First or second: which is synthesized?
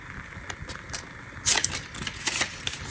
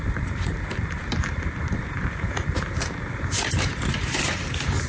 second